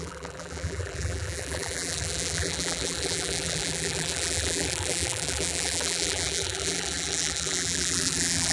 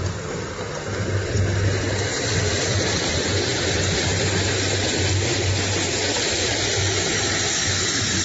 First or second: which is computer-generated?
first